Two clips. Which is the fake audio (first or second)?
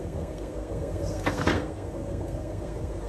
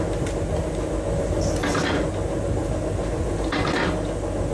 first